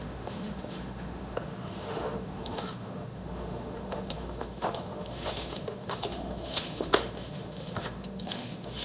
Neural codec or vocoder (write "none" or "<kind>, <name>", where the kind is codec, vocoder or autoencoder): autoencoder, DAC-VAE